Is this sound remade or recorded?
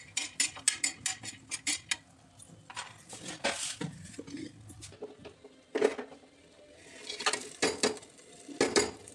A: recorded